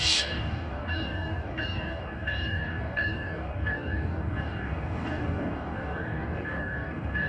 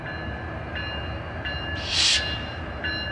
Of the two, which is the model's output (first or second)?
first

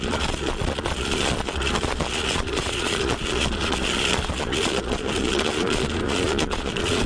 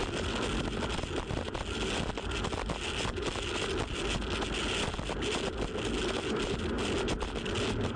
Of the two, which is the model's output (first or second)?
first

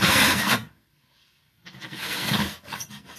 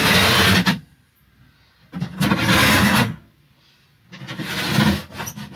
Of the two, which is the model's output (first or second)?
first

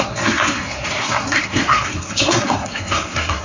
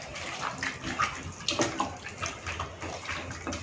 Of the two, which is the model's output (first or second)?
first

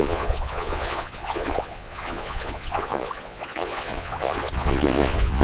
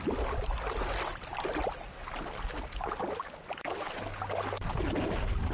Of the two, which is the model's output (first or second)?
first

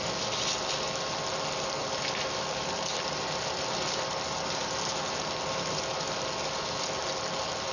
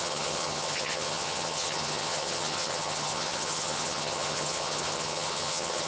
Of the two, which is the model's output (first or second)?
second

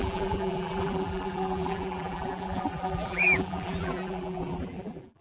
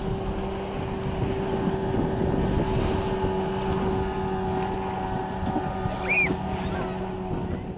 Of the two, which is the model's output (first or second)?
first